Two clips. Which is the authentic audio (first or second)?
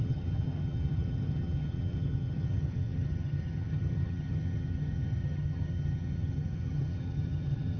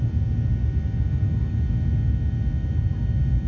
second